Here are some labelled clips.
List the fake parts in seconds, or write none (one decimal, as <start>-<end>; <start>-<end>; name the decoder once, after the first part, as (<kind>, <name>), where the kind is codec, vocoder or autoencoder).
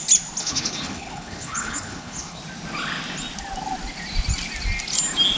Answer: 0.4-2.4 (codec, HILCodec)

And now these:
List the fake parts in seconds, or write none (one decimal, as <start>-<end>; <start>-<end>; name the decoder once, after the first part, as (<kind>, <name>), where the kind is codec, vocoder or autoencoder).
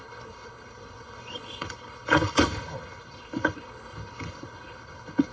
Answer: 0.0-5.3 (codec, HILCodec)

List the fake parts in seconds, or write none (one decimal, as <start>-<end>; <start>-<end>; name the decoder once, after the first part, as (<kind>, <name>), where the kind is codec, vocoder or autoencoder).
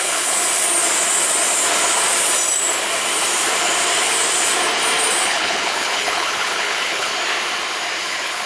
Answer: 0.0-0.4 (codec, HILCodec); 5.2-7.1; 8.0-8.5